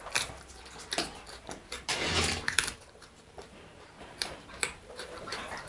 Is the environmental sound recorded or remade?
remade